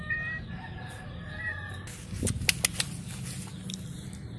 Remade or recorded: recorded